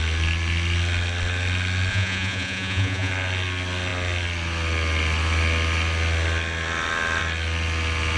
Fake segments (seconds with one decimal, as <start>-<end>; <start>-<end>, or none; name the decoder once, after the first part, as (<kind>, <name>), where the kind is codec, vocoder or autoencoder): 1.9-3.1 (vocoder, Vocos)